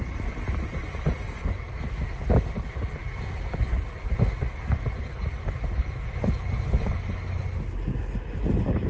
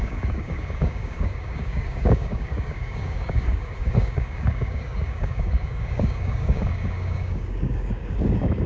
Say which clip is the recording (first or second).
first